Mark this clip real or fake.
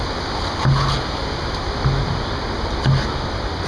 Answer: real